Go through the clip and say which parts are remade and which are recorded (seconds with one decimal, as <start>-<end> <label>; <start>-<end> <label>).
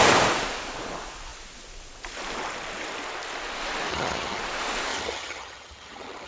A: 0.0-3.9 recorded; 3.9-4.4 remade; 4.4-4.9 recorded; 4.9-6.3 remade